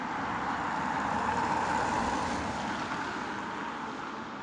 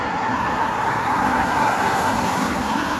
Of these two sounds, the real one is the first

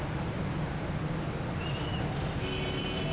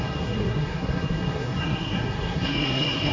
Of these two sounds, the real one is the first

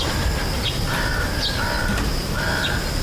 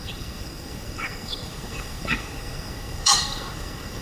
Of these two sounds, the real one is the first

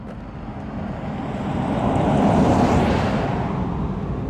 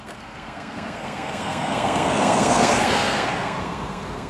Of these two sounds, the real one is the first